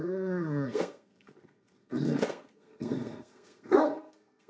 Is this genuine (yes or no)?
no